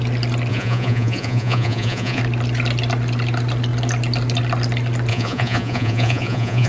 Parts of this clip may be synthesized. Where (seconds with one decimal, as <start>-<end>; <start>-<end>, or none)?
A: 0.5-2.2; 5.1-6.7